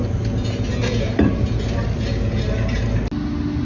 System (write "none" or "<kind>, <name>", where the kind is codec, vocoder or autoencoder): none